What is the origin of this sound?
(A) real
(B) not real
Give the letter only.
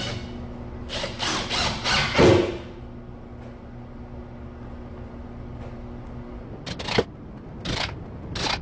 A